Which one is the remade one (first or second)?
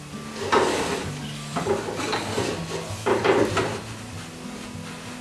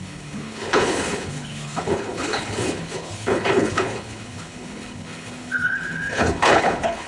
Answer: second